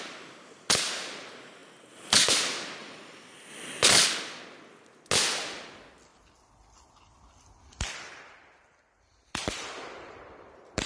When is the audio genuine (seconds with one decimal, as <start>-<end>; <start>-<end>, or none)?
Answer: 0.0-2.8; 4.4-6.1